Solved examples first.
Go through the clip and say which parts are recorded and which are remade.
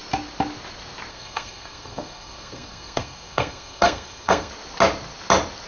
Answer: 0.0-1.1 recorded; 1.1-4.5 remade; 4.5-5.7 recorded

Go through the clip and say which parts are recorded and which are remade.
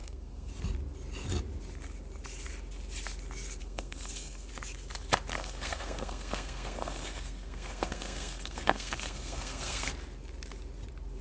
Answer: 0.0-0.5 remade; 0.5-3.6 recorded; 3.6-4.5 remade; 4.5-5.3 recorded; 5.3-9.9 remade; 9.9-11.2 recorded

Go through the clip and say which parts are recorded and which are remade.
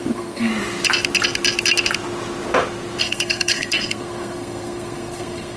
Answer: 0.0-0.5 remade; 0.5-3.0 recorded; 3.0-5.6 remade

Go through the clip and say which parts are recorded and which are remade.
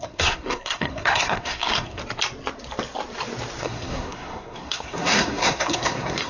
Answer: 0.0-2.0 remade; 2.0-3.6 recorded; 3.6-6.3 remade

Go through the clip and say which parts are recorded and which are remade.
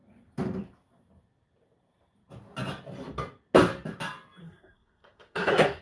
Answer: 0.0-4.4 recorded; 4.4-5.8 remade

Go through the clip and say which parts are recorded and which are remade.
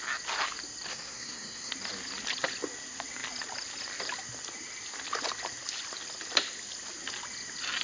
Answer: 0.0-0.9 recorded; 0.9-1.7 remade; 1.7-7.8 recorded